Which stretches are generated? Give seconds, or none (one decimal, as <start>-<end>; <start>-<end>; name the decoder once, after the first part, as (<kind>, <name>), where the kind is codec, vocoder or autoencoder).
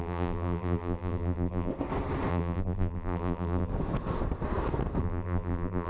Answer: 0.0-1.7 (vocoder, BigVGAN v2); 2.3-3.7; 5.0-5.9